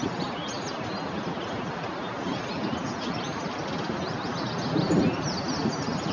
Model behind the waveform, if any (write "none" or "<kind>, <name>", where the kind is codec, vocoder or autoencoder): none